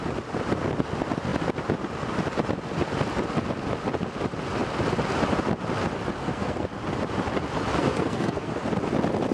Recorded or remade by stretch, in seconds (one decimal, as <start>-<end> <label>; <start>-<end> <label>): 0.0-6.2 recorded; 6.2-6.7 remade; 6.7-7.7 recorded; 7.7-8.5 remade; 8.5-9.3 recorded